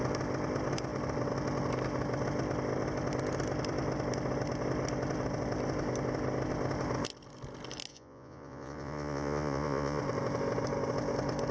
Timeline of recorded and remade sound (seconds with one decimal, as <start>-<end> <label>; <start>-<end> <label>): 0.0-7.9 recorded; 7.9-10.0 remade; 10.0-11.5 recorded